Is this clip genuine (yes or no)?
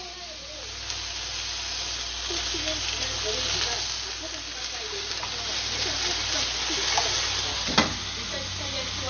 yes